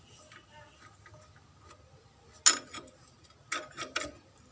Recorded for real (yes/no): yes